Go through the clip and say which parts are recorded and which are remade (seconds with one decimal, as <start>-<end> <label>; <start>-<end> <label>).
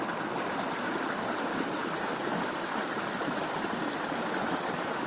0.0-1.8 recorded; 1.8-5.1 remade